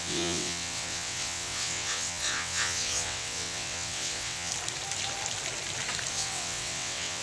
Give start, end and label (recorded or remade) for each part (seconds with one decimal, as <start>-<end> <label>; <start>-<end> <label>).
0.0-4.5 remade; 4.5-6.1 recorded; 6.1-7.2 remade